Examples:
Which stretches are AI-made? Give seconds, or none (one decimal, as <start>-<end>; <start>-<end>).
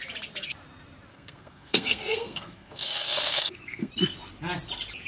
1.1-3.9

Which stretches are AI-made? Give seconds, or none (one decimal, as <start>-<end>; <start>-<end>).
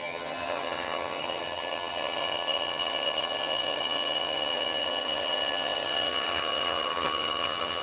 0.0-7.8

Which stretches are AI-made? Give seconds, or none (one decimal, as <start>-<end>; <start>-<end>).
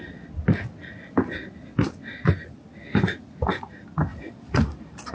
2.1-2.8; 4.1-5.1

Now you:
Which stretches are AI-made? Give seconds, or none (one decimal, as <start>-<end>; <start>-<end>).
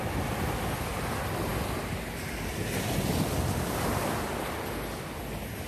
none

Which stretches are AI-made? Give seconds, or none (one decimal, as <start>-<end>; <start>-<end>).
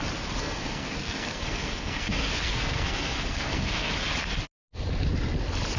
0.4-3.9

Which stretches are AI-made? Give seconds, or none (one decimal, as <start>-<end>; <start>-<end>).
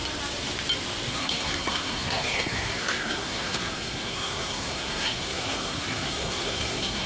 1.1-7.1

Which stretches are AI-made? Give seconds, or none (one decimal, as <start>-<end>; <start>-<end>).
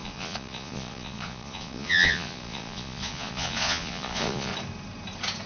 0.0-4.5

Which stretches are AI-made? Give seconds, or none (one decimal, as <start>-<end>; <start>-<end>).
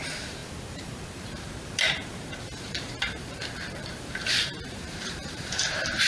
0.0-6.1